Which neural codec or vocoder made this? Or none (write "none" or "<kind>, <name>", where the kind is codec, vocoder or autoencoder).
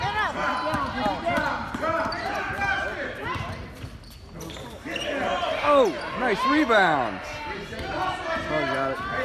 none